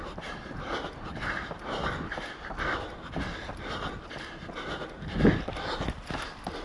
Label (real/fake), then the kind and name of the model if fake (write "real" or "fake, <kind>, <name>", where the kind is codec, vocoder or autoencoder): real